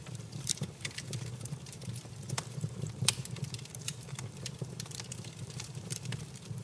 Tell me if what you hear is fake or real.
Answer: fake